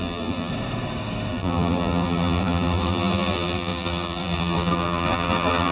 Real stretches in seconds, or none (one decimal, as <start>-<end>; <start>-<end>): 0.5-1.3